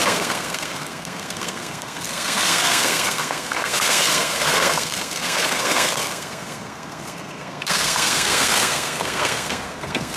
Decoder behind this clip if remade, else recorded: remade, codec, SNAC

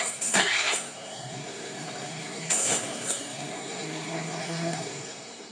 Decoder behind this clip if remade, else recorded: remade, codec, SNAC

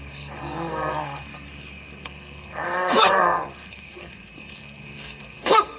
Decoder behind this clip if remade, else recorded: remade, codec, SNAC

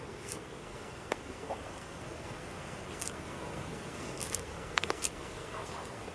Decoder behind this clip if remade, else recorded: remade, codec, SNAC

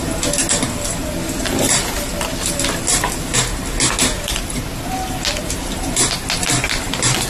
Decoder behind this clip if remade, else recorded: recorded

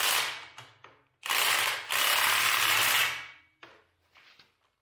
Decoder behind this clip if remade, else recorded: recorded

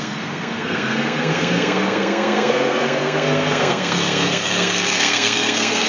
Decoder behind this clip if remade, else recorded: remade, codec, SNAC